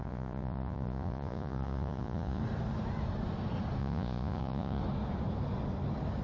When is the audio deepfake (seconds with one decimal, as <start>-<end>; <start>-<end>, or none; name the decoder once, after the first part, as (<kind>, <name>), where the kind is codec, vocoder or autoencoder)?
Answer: 0.0-2.4 (vocoder, Vocos); 3.8-4.8